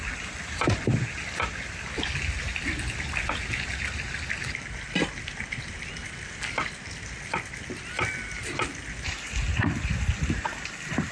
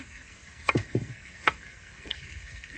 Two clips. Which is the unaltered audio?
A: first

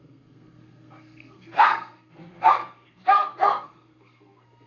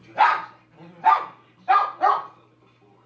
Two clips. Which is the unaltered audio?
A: second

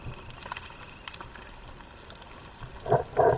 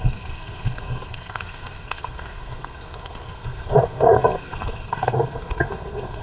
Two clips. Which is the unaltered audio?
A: first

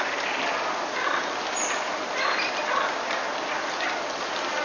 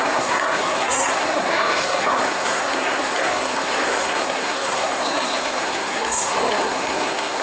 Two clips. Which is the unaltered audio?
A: first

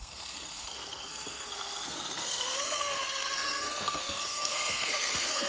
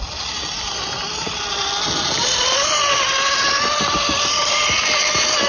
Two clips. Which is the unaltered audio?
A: second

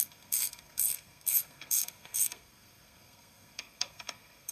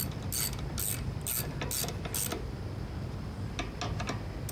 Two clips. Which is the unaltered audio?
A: second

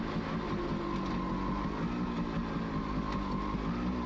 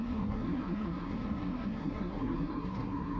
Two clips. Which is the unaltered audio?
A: first